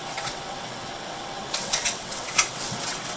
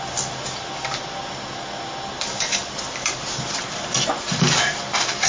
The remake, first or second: first